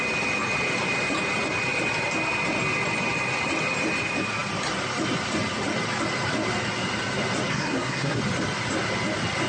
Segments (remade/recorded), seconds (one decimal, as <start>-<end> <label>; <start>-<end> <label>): 0.0-7.5 recorded; 7.5-8.2 remade; 8.2-9.5 recorded